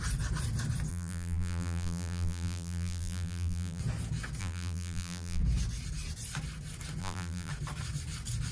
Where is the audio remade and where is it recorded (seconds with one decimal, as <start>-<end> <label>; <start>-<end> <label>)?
0.0-0.9 recorded; 0.9-3.8 remade; 3.8-4.4 recorded; 4.4-5.4 remade; 5.4-7.0 recorded; 7.0-7.5 remade; 7.5-8.5 recorded